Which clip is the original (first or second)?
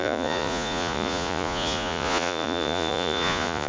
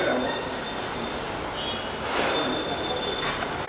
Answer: second